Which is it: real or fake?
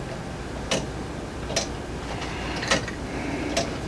real